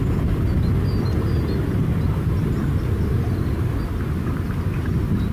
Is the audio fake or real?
real